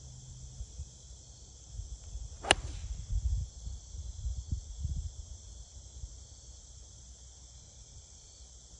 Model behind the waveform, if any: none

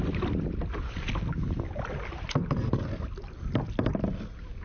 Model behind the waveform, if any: none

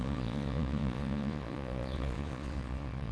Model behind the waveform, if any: vocoder, Vocos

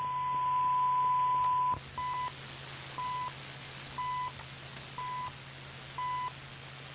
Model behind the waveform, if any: none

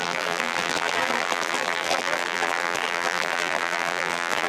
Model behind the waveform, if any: vocoder, BigVGAN v2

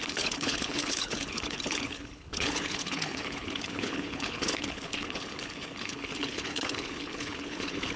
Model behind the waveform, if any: codec, HILCodec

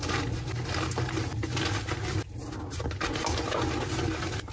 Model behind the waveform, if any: none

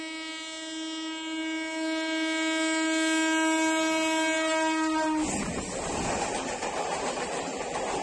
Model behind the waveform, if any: none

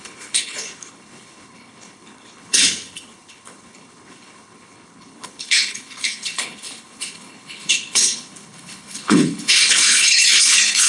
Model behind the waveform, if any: codec, HILCodec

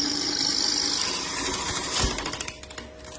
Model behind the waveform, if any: none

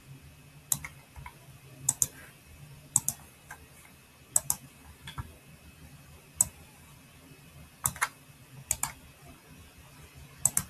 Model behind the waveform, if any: none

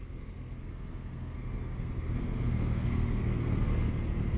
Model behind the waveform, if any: codec, SNAC